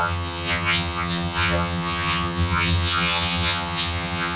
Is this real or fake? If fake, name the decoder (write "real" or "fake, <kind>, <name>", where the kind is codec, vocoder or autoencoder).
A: fake, vocoder, HiFi-GAN